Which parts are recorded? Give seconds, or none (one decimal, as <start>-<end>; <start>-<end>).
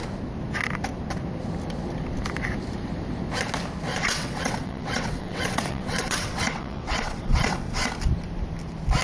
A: 0.0-3.9; 7.9-9.0